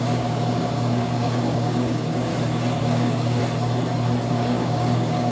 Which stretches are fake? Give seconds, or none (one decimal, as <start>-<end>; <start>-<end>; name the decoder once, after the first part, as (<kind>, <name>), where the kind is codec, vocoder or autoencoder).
0.0-2.3 (codec, DAC); 2.8-3.4; 4.3-5.3